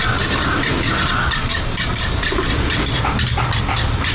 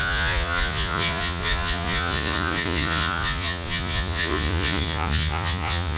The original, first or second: first